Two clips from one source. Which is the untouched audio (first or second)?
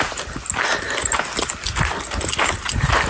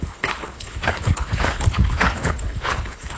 first